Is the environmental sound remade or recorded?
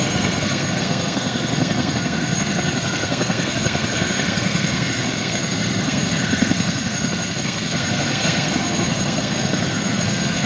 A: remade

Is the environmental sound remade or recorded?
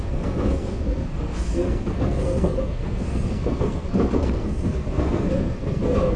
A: remade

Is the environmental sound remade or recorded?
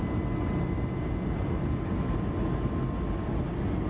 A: recorded